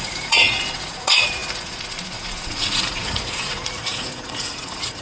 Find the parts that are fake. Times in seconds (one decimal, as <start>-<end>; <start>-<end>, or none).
0.0-5.0